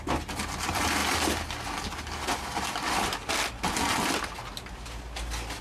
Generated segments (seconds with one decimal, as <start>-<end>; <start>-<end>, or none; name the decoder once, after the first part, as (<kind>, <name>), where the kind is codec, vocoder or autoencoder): none